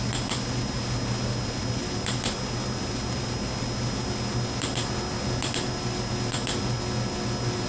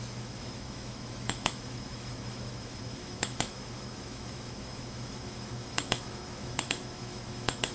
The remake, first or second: second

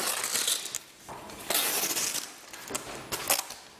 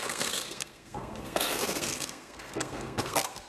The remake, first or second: second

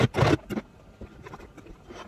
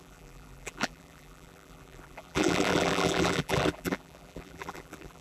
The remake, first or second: second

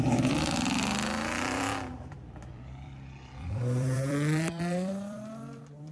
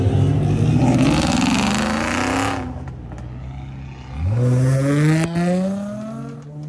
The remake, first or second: first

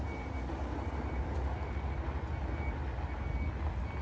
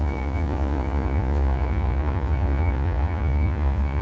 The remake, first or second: second